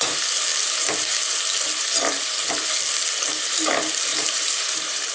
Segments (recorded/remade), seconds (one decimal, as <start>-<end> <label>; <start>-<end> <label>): 0.0-4.1 recorded; 4.1-5.1 remade